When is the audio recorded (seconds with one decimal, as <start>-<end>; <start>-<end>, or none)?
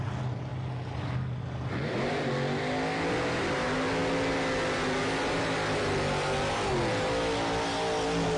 0.0-8.4